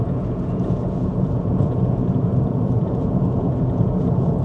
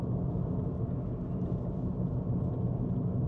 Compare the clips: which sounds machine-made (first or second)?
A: first